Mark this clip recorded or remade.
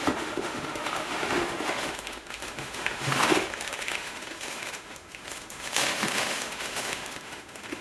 remade